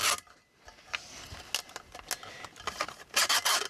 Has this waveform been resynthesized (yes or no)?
no